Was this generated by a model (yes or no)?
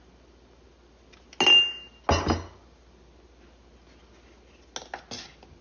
no